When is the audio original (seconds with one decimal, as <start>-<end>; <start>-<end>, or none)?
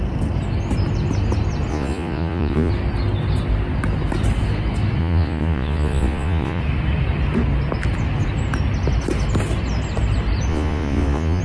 0.0-1.7; 2.7-5.0; 6.6-10.5